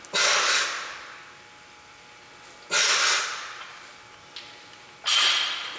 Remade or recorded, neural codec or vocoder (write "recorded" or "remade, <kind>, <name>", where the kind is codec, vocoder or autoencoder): recorded